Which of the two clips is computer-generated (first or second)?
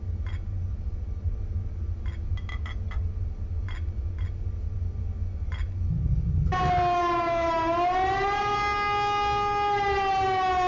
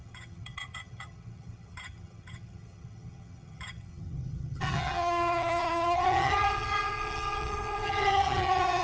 second